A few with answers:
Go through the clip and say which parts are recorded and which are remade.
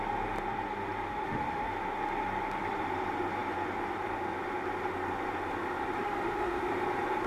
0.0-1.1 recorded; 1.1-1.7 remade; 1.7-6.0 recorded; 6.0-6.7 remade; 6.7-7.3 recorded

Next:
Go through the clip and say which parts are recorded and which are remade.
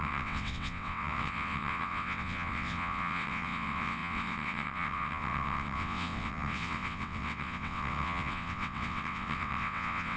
0.0-10.2 remade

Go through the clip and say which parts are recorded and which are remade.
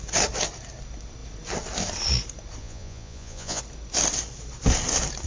0.0-2.6 recorded; 2.6-3.6 remade; 3.6-5.3 recorded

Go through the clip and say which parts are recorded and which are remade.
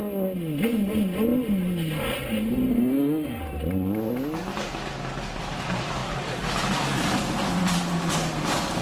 0.0-2.7 recorded; 2.7-3.4 remade; 3.4-8.8 recorded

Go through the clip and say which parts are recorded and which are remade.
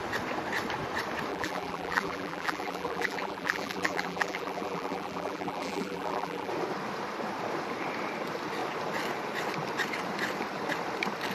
0.0-1.3 recorded; 1.3-6.5 remade; 6.5-11.3 recorded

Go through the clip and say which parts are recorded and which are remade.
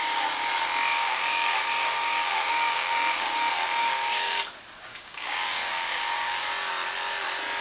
0.0-0.5 remade; 0.5-0.9 recorded; 0.9-3.4 remade; 3.4-3.8 recorded; 3.8-4.4 remade; 4.4-4.9 recorded; 4.9-6.5 remade; 6.5-7.6 recorded